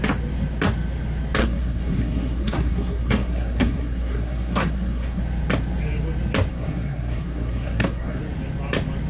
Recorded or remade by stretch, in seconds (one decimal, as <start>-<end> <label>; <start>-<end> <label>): 0.0-1.4 recorded; 1.4-5.2 remade; 5.2-6.5 recorded; 6.5-8.2 remade; 8.2-9.1 recorded